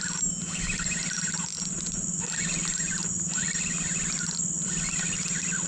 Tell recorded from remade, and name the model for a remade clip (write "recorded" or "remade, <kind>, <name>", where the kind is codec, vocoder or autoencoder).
recorded